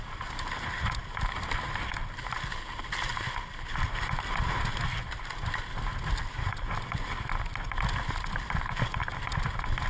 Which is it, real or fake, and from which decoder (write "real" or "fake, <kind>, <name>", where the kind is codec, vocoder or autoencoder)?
real